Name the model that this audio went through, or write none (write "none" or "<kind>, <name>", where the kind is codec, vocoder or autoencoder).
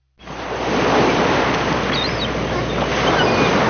vocoder, BigVGAN v2